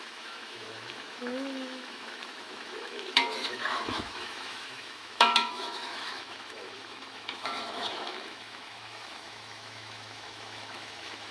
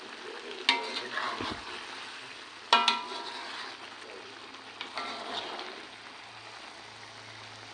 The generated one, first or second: first